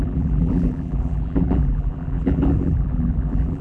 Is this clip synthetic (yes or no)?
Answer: yes